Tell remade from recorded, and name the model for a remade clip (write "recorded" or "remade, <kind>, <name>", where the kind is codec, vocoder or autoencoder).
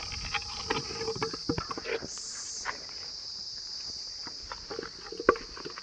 recorded